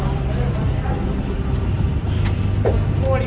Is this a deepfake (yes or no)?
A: yes